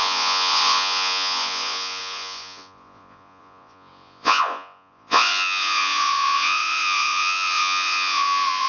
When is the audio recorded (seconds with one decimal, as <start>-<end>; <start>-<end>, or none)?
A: none

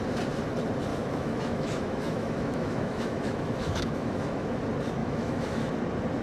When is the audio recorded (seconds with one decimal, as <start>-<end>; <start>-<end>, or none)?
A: 0.0-0.9; 4.6-5.0; 5.7-6.2

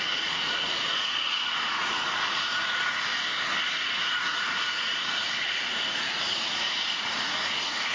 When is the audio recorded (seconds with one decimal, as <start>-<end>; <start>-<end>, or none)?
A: 3.1-3.7

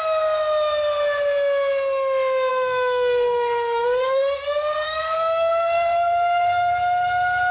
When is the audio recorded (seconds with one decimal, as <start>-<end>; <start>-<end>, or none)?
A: 0.0-2.5; 6.7-7.5

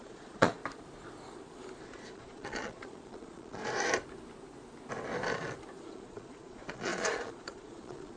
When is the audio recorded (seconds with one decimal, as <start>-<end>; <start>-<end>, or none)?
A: 0.6-1.8; 3.6-5.8